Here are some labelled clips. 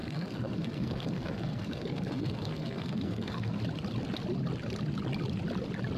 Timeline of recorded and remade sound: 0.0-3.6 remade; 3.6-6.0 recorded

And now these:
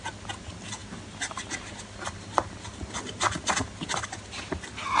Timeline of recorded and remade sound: 0.0-5.0 recorded